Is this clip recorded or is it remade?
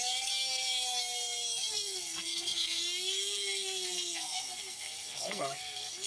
remade